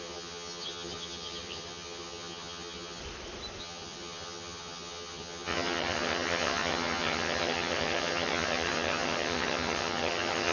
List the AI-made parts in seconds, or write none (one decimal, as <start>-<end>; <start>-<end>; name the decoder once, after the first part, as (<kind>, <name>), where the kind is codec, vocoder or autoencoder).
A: 0.0-3.0 (vocoder, HiFi-GAN); 3.6-10.5